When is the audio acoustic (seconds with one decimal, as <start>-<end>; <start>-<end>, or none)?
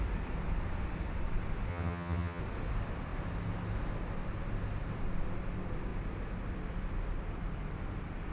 0.0-1.7; 2.4-8.3